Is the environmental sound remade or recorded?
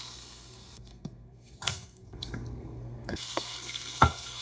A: remade